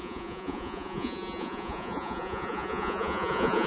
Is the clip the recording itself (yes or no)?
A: no